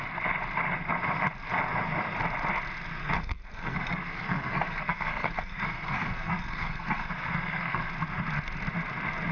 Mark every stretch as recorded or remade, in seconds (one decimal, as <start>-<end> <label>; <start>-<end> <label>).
0.0-3.0 recorded; 3.0-7.9 remade; 7.9-9.3 recorded